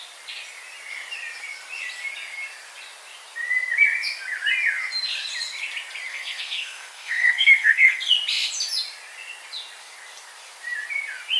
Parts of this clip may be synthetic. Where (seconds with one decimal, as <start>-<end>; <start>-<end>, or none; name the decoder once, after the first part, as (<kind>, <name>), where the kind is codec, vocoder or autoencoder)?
6.1-8.1 (codec, SNAC)